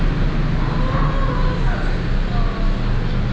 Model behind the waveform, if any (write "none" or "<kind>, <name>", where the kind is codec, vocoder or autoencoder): none